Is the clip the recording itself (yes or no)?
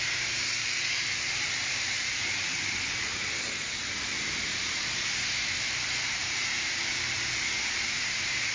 no